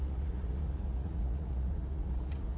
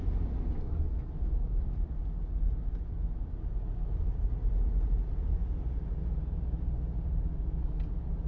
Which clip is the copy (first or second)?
first